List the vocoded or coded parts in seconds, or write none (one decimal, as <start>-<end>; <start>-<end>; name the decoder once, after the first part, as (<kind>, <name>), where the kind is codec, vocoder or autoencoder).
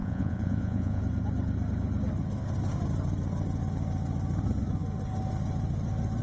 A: 0.0-1.0 (vocoder, Vocos)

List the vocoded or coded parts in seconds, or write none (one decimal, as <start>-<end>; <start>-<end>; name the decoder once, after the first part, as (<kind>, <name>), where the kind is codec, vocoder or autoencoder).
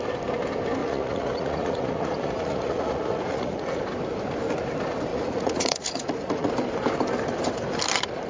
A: 0.8-3.8 (vocoder, Vocos); 5.1-6.5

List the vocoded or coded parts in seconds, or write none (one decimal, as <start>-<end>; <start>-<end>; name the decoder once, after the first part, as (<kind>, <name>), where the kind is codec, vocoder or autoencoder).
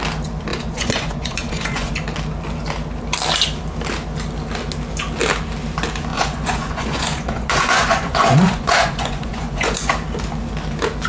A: 0.5-1.9 (vocoder, Vocos); 6.1-9.9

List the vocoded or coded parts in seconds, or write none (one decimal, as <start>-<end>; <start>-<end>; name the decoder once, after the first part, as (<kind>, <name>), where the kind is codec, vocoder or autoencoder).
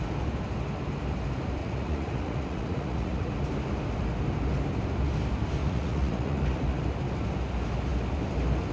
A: 1.6-3.3 (vocoder, Vocos); 5.6-6.8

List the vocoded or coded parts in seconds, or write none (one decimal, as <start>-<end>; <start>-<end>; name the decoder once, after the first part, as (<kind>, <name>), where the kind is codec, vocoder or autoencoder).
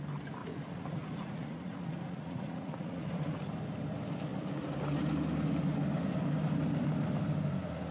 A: 0.4-3.4 (vocoder, Vocos)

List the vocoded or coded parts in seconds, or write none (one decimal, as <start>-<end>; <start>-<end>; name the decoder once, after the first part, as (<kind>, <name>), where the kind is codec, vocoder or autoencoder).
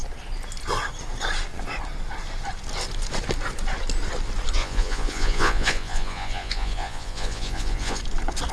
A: 4.6-8.0 (vocoder, Vocos)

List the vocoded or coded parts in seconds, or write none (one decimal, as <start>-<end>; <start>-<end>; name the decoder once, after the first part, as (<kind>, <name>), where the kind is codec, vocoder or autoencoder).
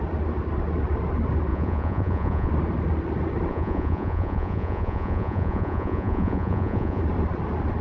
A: 1.5-2.5 (vocoder, Vocos); 3.5-7.0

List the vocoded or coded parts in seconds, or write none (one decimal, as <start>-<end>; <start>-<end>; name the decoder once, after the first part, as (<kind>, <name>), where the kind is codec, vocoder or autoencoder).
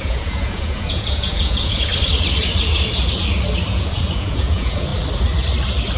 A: 0.0-1.9 (vocoder, Vocos); 3.7-4.9